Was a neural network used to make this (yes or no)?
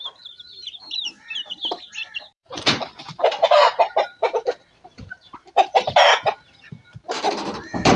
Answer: yes